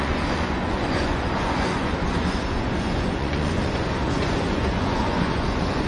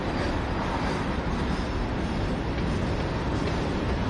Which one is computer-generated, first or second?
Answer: first